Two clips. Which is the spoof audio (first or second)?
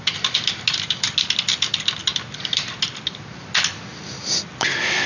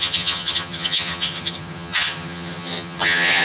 second